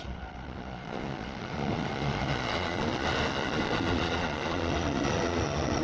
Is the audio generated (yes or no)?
yes